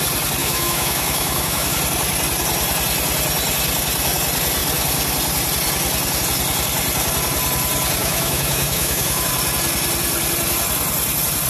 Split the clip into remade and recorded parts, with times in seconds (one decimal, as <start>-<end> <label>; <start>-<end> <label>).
0.0-0.4 recorded; 0.4-1.8 remade; 1.8-8.0 recorded; 8.0-9.3 remade; 9.3-11.5 recorded